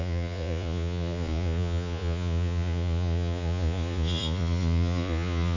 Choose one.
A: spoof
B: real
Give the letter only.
A